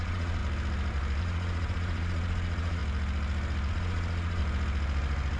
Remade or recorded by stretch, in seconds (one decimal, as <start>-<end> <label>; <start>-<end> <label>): 0.0-0.4 remade; 0.4-1.2 recorded; 1.2-2.8 remade; 2.8-3.7 recorded; 3.7-4.4 remade; 4.4-5.4 recorded